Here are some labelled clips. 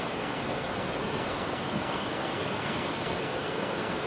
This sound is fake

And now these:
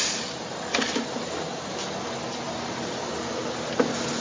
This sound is real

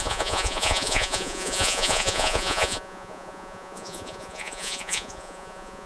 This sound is fake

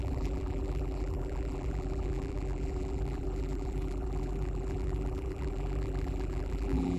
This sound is fake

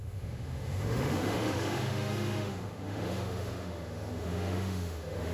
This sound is fake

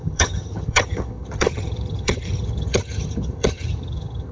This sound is fake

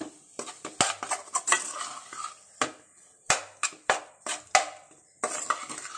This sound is real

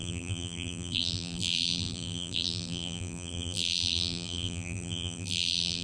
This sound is fake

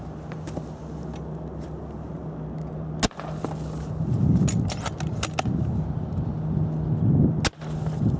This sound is real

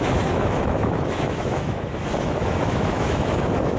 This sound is fake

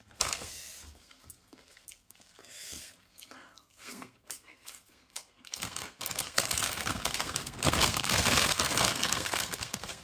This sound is fake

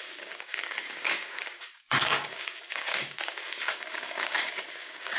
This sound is fake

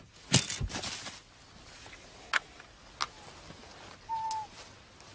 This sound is real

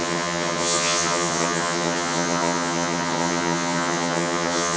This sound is fake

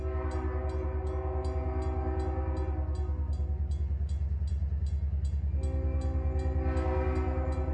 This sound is real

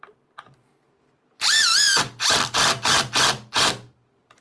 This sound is real